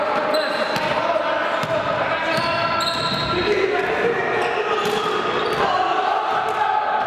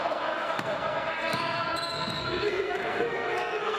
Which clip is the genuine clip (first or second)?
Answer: first